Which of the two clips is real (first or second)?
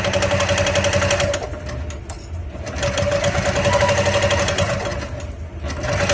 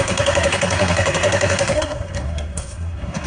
first